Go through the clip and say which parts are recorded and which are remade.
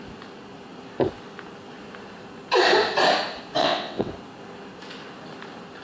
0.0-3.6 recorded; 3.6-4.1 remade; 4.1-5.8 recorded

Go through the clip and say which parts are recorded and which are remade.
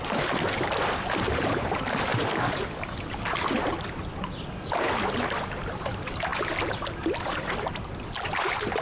0.0-8.8 recorded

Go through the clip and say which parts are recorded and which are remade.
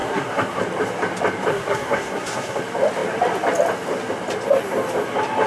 0.0-0.6 remade; 0.6-1.5 recorded; 1.5-2.6 remade; 2.6-5.5 recorded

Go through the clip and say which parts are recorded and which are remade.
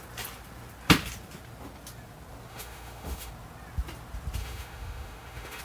0.0-2.5 recorded; 2.5-3.3 remade; 3.3-4.4 recorded; 4.4-5.6 remade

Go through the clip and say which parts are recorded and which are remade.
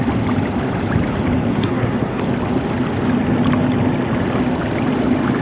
0.0-1.5 recorded; 1.5-2.2 remade; 2.2-5.4 recorded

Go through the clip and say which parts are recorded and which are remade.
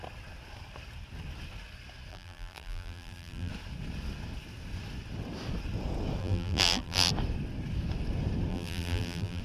0.0-2.1 recorded; 2.1-3.5 remade; 3.5-6.2 recorded; 6.2-7.1 remade; 7.1-8.5 recorded; 8.5-9.4 remade